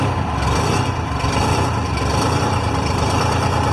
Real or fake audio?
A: fake